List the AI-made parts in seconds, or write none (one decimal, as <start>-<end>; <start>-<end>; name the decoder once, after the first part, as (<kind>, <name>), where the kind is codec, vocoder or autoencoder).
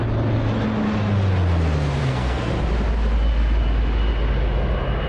2.0-2.5 (codec, SNAC)